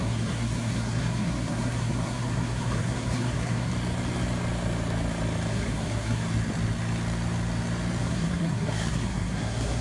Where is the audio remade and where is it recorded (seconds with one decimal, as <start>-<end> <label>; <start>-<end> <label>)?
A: 0.0-3.7 remade; 3.7-5.5 recorded; 5.5-6.2 remade; 6.2-8.0 recorded; 8.0-9.8 remade